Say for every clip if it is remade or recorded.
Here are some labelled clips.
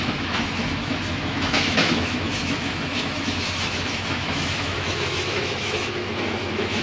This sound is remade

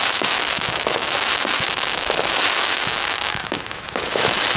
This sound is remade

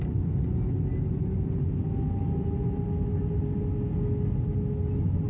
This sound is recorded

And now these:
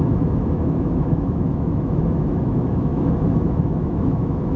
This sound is remade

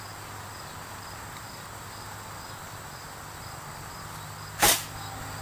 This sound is recorded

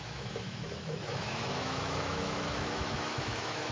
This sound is remade